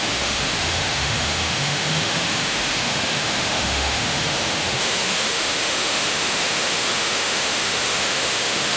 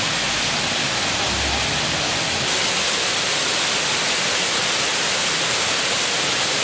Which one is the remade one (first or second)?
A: first